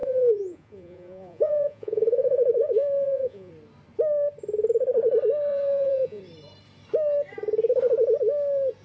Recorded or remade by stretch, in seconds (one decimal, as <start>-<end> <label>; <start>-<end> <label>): 0.0-3.5 remade; 3.5-5.5 recorded; 5.5-6.2 remade; 6.2-8.8 recorded

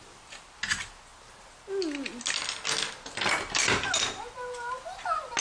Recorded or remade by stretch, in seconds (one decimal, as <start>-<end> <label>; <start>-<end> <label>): 0.0-5.4 recorded

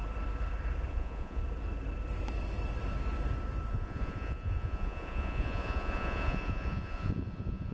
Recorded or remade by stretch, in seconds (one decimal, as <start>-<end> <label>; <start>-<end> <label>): 0.0-0.9 recorded; 0.9-1.4 remade; 1.4-3.7 recorded; 3.7-7.7 remade

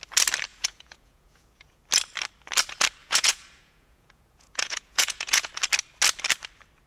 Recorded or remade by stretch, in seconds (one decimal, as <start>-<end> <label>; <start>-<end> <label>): 0.0-0.5 recorded; 0.5-1.8 remade; 1.8-3.0 recorded; 3.0-5.5 remade; 5.5-6.9 recorded

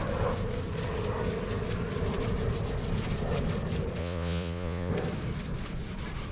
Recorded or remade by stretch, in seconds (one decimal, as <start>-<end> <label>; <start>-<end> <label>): 0.0-4.0 recorded; 4.0-4.9 remade; 4.9-6.3 recorded

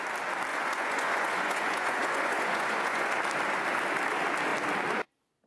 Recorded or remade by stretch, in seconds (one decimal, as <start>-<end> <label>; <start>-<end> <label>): 0.0-0.5 recorded; 0.5-3.1 remade; 3.1-5.5 recorded

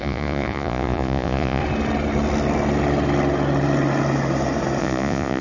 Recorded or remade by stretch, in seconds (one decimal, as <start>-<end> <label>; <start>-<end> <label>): 0.0-1.6 remade; 1.6-4.8 recorded; 4.8-5.4 remade

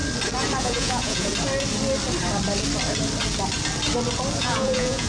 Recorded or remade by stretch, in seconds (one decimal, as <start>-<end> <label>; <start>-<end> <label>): 0.0-0.6 recorded; 0.6-1.3 remade; 1.3-4.4 recorded; 4.4-5.1 remade